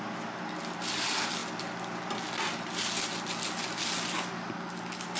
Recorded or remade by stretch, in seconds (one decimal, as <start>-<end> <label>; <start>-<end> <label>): 0.0-5.2 recorded